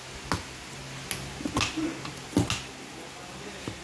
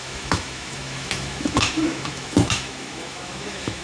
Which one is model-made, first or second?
second